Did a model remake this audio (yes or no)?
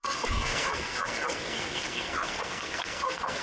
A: yes